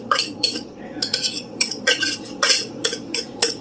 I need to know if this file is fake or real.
fake